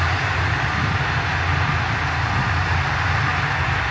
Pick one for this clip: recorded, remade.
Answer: recorded